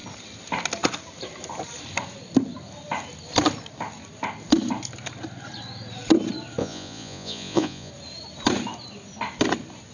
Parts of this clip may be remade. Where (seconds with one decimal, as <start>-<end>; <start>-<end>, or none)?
6.6-7.9

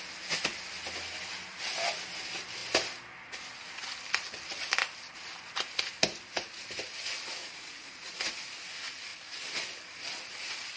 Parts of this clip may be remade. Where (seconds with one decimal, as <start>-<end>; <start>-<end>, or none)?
7.4-8.3

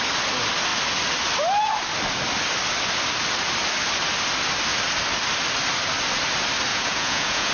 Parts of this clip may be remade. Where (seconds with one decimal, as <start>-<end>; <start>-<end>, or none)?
6.7-7.5

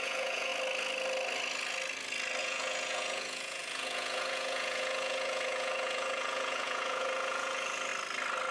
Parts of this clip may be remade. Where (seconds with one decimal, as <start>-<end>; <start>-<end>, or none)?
0.0-0.5; 2.4-7.9

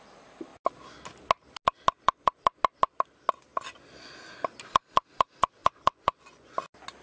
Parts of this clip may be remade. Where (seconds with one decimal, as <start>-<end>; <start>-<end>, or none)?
5.6-6.5